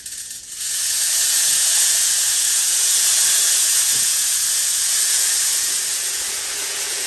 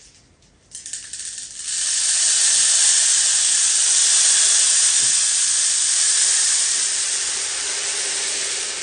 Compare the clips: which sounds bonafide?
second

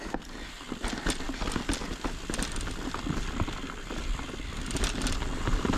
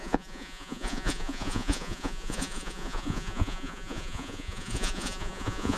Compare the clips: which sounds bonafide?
first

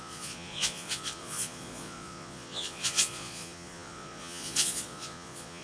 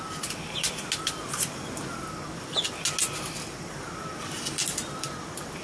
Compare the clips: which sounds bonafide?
second